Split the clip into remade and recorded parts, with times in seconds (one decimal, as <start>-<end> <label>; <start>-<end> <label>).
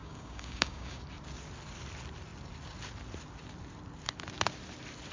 0.0-1.0 remade; 1.0-5.1 recorded